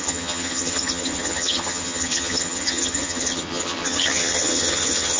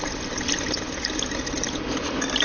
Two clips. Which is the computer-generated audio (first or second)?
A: first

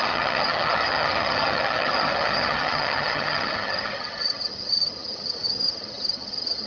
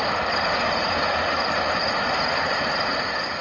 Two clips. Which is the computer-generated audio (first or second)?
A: first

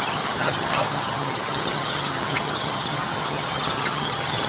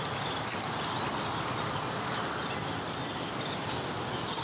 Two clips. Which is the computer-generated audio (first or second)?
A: first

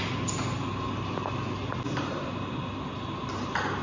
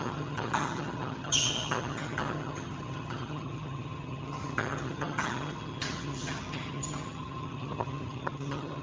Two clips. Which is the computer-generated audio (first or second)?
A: second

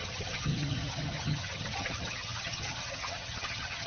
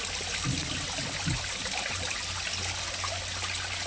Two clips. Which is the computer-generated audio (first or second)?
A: first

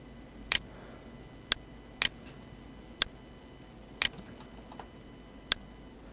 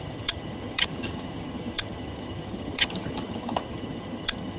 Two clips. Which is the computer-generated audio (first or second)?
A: second